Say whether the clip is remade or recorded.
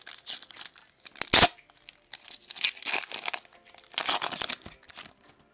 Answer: recorded